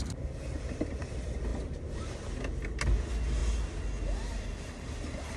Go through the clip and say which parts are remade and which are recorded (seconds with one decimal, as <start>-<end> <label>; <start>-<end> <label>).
0.0-1.0 remade; 1.0-3.4 recorded; 3.4-5.4 remade